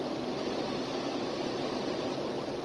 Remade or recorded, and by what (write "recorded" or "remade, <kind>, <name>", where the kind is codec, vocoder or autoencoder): recorded